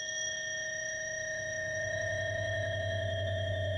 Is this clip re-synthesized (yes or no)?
yes